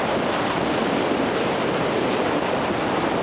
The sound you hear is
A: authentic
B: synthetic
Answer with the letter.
A